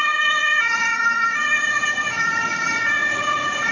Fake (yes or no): yes